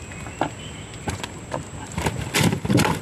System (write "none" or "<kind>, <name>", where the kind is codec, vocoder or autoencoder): none